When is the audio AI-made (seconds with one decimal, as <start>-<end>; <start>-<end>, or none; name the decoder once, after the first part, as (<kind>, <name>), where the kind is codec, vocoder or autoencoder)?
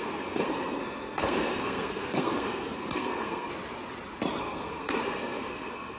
0.0-3.5 (codec, SNAC); 4.4-6.0